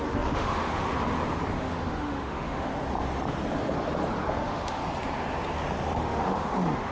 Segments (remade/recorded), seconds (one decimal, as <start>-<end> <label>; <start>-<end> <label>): 0.0-0.9 remade; 0.9-1.6 recorded; 1.6-2.7 remade; 2.7-4.3 recorded; 4.3-4.8 remade; 4.8-6.0 recorded; 6.0-6.9 remade